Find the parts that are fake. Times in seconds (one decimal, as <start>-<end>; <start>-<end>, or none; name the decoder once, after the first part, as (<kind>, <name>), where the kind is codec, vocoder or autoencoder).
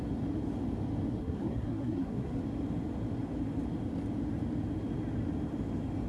1.2-2.4 (codec, SNAC)